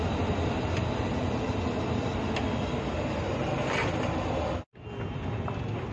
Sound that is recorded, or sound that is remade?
recorded